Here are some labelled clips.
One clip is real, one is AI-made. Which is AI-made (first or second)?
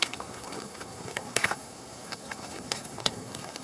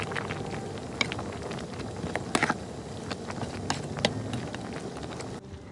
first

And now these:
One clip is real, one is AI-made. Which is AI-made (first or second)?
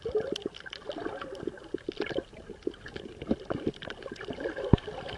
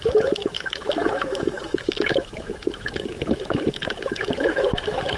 second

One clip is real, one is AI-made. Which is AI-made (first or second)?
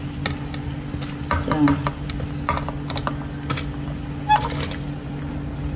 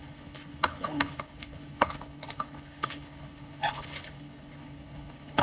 second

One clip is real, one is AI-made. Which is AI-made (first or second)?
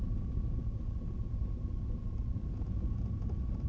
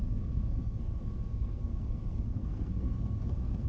second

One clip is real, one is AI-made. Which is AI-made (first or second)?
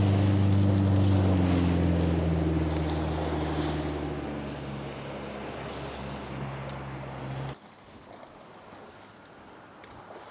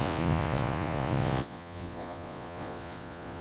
second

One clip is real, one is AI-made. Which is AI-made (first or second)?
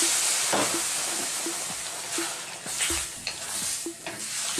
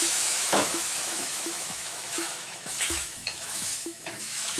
second